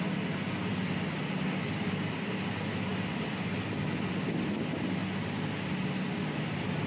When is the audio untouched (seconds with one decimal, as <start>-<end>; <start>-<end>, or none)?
0.0-6.9

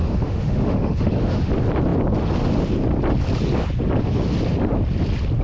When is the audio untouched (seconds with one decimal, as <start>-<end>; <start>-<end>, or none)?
1.5-5.4

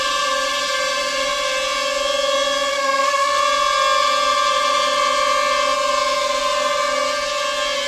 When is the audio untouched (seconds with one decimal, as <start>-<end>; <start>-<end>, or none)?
0.0-2.7; 3.4-7.9

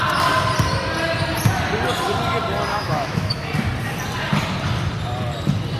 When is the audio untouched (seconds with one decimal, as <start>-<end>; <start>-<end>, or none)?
0.0-2.7; 3.5-5.8

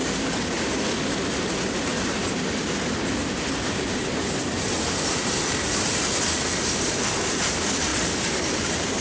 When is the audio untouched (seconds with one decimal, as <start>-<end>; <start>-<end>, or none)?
0.0-1.3

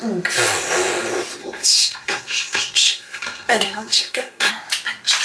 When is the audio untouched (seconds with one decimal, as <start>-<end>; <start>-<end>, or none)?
0.0-1.4; 4.5-5.2

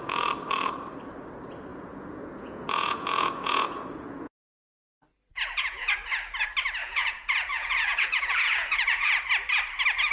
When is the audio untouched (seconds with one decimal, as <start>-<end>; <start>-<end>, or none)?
0.0-1.7; 4.7-5.3; 5.9-6.8; 9.2-10.1